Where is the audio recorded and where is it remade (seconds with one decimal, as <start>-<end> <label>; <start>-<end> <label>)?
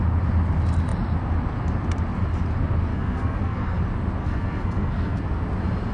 0.0-2.9 recorded; 2.9-3.8 remade; 3.8-4.2 recorded; 4.2-5.2 remade; 5.2-5.9 recorded